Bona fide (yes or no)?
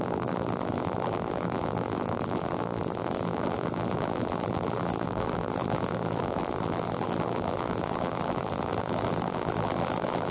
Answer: no